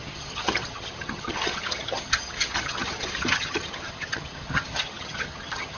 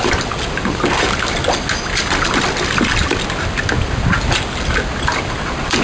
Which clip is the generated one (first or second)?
first